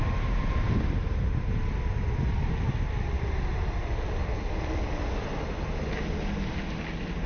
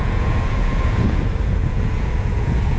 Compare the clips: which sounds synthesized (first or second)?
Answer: second